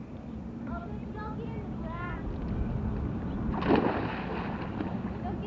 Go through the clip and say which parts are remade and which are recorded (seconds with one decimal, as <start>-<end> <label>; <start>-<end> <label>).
0.0-5.5 recorded